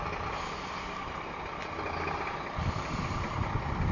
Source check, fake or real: real